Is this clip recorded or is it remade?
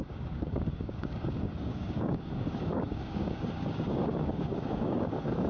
remade